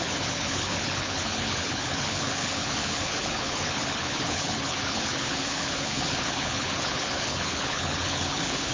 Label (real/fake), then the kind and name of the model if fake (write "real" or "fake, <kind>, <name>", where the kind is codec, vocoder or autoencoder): fake, codec, HILCodec